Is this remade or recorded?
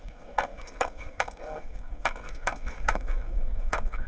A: remade